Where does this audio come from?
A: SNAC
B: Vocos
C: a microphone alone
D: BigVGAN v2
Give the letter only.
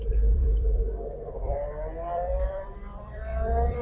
D